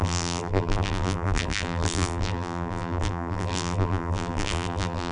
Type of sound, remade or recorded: remade